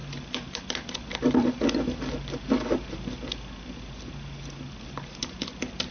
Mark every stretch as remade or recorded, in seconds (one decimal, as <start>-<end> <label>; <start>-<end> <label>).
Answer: 0.0-5.9 recorded